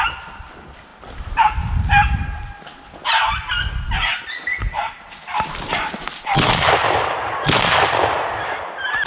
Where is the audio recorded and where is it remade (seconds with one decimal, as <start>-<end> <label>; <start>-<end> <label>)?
0.0-9.1 recorded